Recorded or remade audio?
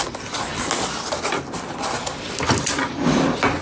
recorded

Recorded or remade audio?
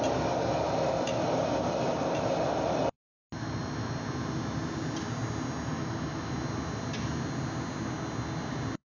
recorded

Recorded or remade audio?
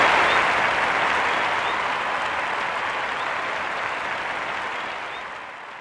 recorded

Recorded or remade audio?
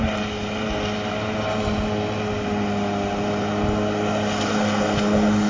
recorded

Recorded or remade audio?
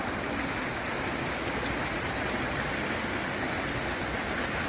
recorded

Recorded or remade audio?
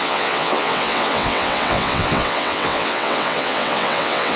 remade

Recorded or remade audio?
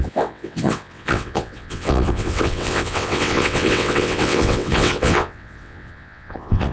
remade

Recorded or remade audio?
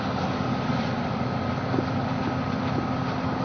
recorded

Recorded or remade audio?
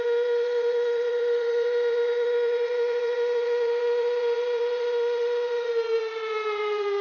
remade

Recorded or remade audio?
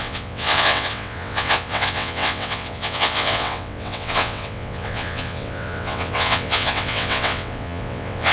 remade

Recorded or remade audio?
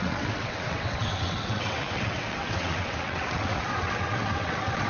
remade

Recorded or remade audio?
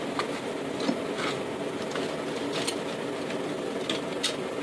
recorded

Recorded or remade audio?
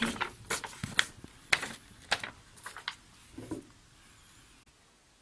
recorded